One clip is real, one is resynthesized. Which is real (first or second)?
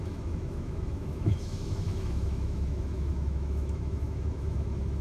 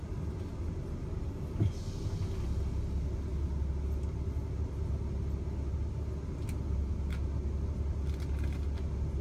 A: second